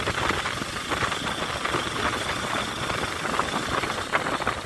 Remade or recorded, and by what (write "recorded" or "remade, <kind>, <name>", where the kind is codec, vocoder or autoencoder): recorded